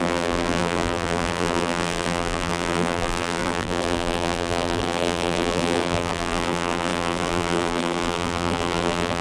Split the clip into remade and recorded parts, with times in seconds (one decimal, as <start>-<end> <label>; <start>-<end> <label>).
0.0-9.2 remade